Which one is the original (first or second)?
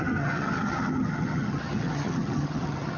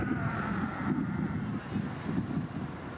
second